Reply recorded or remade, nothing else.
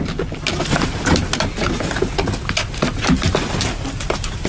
recorded